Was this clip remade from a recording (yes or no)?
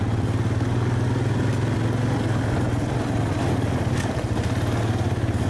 no